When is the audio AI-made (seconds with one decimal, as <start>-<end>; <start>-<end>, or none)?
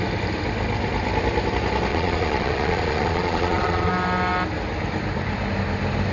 1.9-3.9